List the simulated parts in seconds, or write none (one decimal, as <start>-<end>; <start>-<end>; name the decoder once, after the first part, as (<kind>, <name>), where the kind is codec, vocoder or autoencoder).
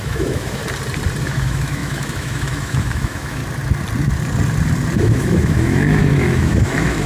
0.0-0.6 (autoencoder, DAC-VAE); 1.2-3.4; 5.0-7.1